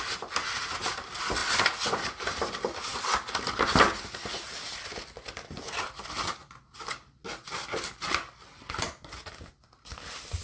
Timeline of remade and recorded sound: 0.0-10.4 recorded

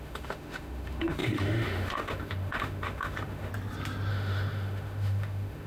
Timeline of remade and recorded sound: 0.0-3.5 remade; 3.5-4.1 recorded; 4.1-5.7 remade